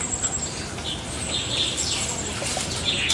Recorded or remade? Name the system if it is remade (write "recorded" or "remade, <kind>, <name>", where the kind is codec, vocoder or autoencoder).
recorded